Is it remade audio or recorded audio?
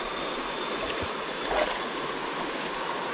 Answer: remade